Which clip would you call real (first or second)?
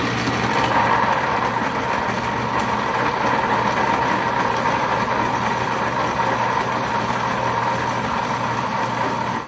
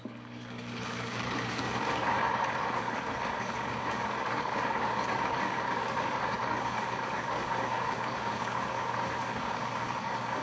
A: first